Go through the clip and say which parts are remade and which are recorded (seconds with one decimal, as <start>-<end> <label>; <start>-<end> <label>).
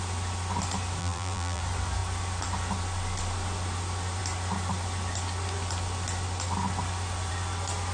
0.0-1.0 recorded; 1.0-1.6 remade; 1.6-7.9 recorded